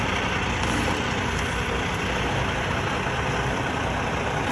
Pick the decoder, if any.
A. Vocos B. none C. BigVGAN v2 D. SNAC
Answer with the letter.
B